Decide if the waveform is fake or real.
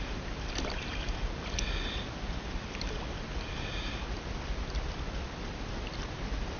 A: real